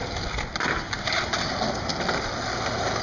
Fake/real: real